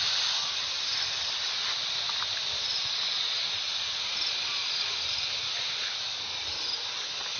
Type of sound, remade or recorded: recorded